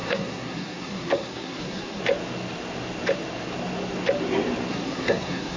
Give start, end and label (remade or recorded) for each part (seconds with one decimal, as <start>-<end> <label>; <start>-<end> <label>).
0.0-2.0 remade; 2.0-4.7 recorded; 4.7-5.6 remade